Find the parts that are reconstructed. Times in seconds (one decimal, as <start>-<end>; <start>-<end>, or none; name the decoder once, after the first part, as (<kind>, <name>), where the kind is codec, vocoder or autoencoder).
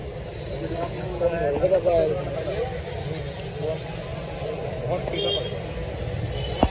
0.0-2.2 (vocoder, BigVGAN v2); 4.1-4.7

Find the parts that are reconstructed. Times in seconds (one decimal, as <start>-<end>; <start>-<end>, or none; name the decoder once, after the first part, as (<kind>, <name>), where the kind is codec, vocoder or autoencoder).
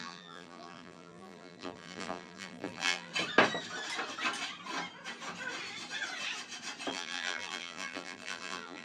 0.0-3.1 (vocoder, BigVGAN v2); 6.9-8.8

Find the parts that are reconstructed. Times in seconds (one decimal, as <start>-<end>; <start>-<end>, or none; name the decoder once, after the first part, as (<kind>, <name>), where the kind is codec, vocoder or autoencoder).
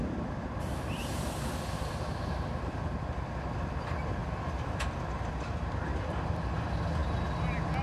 4.2-5.3 (vocoder, BigVGAN v2)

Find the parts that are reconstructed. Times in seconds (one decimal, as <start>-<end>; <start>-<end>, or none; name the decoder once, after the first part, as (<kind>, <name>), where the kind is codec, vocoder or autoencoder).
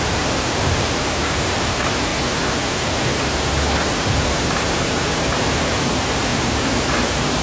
0.0-2.1 (vocoder, BigVGAN v2); 4.9-7.4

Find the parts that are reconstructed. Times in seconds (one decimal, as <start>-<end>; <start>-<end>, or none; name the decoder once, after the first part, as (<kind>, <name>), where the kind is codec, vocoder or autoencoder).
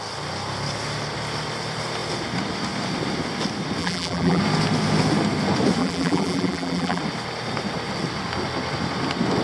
3.8-4.4 (vocoder, BigVGAN v2); 5.8-7.0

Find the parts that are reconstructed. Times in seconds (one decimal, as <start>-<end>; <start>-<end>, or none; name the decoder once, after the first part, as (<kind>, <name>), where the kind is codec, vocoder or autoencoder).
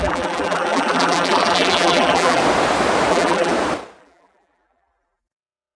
0.0-2.4 (vocoder, BigVGAN v2); 3.1-3.5; 4.0-5.7